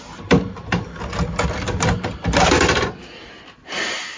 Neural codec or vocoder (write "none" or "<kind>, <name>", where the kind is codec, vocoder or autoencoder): none